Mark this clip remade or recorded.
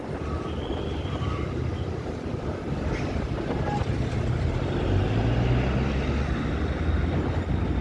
recorded